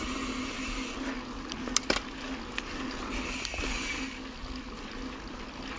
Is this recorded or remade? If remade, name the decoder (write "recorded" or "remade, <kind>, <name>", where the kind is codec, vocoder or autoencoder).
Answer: recorded